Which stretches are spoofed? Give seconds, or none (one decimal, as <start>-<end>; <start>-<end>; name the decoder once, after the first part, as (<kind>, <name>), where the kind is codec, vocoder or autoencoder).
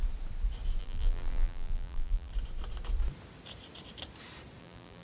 0.8-2.3 (vocoder, BigVGAN v2); 4.6-5.0